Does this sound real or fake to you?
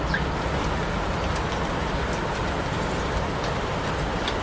real